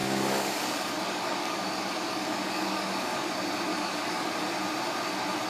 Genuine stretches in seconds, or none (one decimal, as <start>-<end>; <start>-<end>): 3.3-3.7; 4.3-5.5